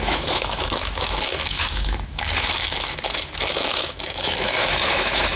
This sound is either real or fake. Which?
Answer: fake